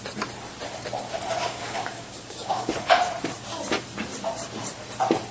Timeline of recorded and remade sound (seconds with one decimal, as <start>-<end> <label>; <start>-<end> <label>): 0.0-1.4 recorded; 1.4-2.7 remade; 2.7-5.3 recorded